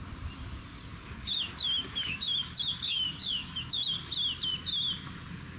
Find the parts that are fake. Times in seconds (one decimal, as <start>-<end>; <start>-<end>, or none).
0.9-4.1